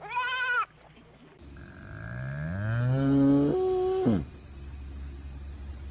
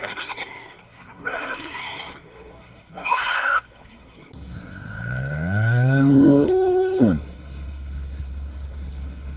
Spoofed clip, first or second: second